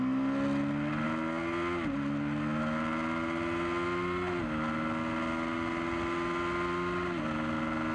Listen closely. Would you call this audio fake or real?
real